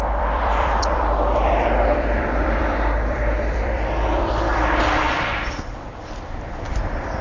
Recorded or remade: remade